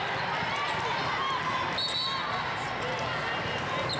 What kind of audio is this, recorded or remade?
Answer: recorded